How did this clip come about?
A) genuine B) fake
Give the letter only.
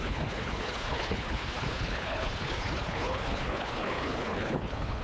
B